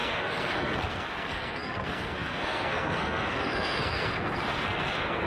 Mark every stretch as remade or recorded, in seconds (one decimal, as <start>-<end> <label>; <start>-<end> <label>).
0.0-5.3 remade